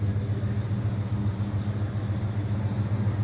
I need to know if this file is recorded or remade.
recorded